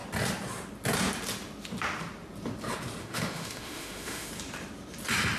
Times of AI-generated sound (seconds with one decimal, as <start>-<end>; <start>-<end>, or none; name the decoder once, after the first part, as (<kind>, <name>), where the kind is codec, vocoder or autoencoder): 3.0-4.3 (autoencoder, DAC-VAE)